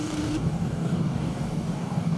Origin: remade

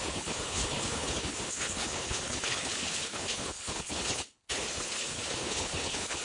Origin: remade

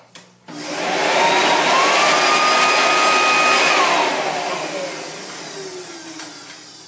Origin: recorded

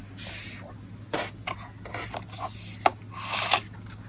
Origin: recorded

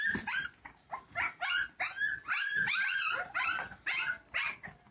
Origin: recorded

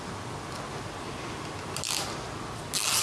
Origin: recorded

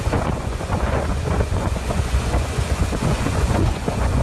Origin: remade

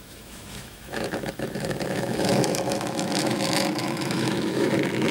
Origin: remade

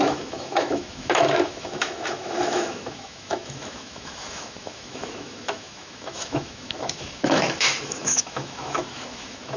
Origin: remade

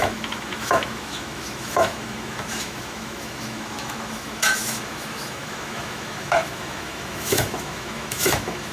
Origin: remade